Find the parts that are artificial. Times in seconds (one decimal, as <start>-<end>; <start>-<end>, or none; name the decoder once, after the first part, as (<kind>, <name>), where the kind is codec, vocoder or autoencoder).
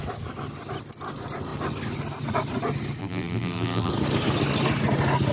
3.0-3.9 (vocoder, BigVGAN v2)